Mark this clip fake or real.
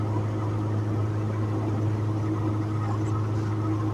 real